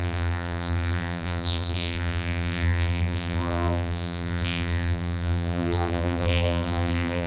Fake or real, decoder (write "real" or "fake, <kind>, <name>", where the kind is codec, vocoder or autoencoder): fake, vocoder, BigVGAN v2